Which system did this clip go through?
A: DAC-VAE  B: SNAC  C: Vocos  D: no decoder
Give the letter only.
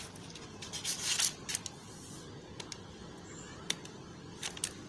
D